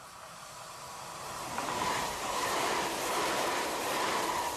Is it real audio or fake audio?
fake